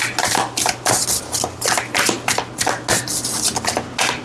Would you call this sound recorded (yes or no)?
yes